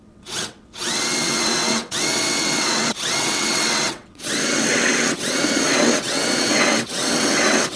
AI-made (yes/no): yes